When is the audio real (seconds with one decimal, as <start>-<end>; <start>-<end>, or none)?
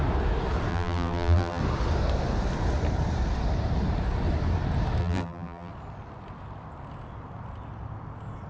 0.0-0.7; 1.6-5.0; 5.7-8.5